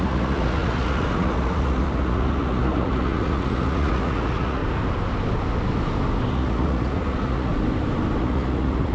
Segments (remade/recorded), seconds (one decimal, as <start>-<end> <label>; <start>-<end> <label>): 0.0-4.6 remade; 4.6-6.3 recorded; 6.3-7.5 remade; 7.5-8.2 recorded; 8.2-8.9 remade